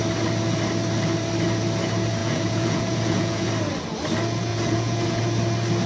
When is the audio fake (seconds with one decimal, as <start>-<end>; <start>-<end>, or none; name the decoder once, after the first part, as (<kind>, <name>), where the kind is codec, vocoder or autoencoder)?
2.2-3.5 (vocoder, Vocos); 4.5-5.2